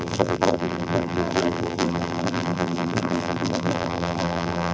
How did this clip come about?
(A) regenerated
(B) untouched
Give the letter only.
A